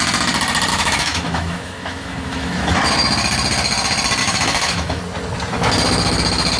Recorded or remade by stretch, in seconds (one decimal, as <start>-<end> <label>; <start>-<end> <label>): 0.0-0.7 recorded; 0.7-2.7 remade; 2.7-4.2 recorded; 4.2-5.0 remade; 5.0-6.6 recorded